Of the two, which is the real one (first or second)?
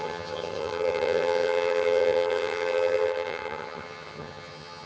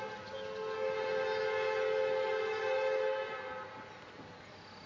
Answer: second